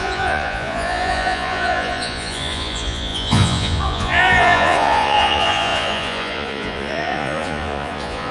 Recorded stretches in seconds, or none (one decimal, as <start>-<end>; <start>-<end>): none